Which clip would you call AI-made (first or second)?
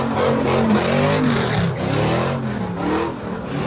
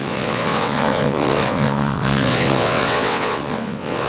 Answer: second